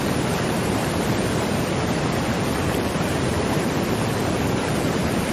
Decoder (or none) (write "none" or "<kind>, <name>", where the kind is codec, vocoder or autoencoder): vocoder, BigVGAN v2